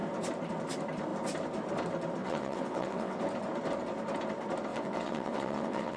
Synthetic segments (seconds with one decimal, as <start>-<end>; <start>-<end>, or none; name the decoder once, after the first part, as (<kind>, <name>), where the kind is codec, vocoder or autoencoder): 2.2-3.2 (vocoder, WaveNeXt); 4.7-6.0